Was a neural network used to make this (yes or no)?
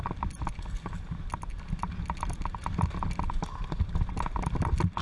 no